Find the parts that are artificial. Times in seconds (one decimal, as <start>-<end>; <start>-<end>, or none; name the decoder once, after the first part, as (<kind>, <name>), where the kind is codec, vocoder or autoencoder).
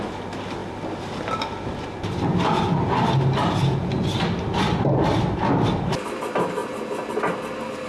none